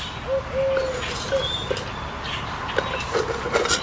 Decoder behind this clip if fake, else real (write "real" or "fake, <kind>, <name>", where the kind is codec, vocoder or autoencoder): real